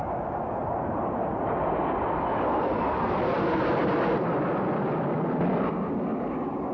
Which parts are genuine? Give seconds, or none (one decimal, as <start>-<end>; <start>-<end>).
0.0-6.7